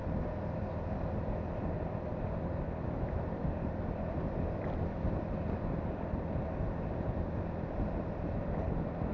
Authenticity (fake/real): real